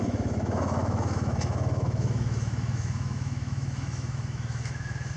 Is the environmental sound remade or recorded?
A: remade